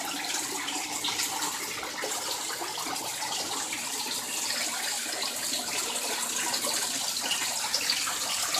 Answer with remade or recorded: recorded